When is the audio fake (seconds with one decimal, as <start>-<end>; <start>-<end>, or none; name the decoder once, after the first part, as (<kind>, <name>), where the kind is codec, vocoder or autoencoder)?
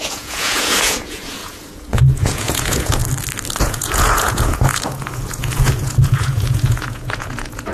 0.0-3.0 (vocoder, Vocos); 3.6-7.7